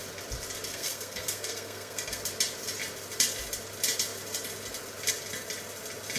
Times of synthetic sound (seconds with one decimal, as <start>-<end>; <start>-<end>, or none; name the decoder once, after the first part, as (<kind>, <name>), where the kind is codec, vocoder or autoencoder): 0.7-2.2 (codec, SNAC)